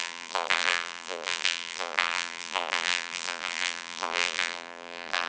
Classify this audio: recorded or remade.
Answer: remade